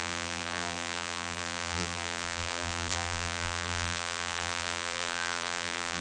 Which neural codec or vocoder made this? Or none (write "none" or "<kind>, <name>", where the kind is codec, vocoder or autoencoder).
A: vocoder, BigVGAN v2